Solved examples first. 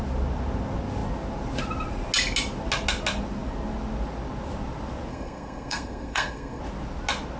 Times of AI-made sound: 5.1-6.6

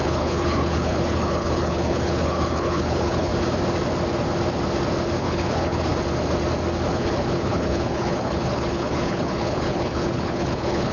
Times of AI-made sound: 0.0-3.3; 5.2-5.9; 6.9-10.9

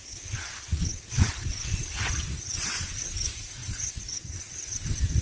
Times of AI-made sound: 0.0-5.2

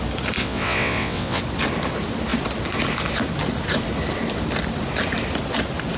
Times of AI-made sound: 0.4-1.4

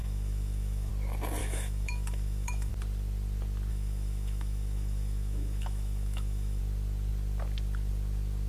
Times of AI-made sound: 0.0-0.9; 1.4-2.7; 3.7-6.6